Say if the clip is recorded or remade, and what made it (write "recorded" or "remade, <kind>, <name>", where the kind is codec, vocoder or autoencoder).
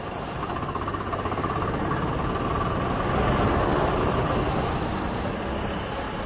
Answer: recorded